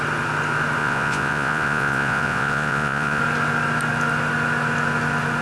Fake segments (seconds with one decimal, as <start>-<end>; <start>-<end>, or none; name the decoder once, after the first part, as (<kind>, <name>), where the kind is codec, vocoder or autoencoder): 0.8-3.2 (vocoder, Vocos)